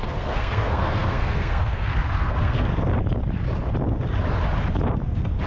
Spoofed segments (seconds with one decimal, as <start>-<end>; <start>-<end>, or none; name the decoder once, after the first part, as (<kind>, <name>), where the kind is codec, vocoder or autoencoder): 0.0-2.7 (codec, SNAC)